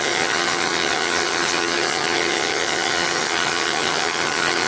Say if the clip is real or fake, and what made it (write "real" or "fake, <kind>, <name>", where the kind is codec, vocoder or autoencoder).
fake, vocoder, HiFi-GAN